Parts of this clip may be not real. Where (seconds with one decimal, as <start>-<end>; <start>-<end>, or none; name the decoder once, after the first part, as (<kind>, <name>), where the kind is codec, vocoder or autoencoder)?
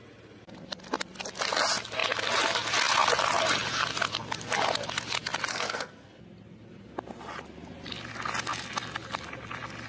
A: 5.5-6.2 (codec, SNAC)